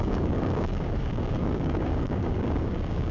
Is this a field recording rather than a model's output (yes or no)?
no